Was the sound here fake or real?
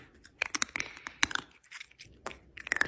fake